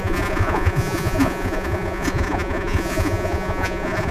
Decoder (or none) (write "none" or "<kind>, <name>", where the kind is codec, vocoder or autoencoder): vocoder, Vocos